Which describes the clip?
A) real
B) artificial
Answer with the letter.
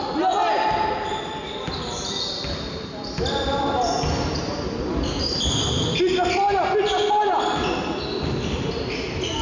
A